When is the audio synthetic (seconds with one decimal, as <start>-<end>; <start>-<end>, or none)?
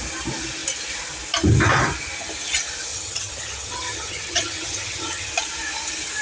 2.9-5.3